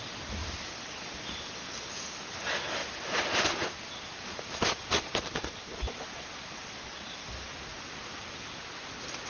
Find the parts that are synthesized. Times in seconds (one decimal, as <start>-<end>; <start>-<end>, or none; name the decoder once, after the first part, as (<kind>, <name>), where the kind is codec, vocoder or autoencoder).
0.4-1.0 (vocoder, BigVGAN v2); 2.8-6.7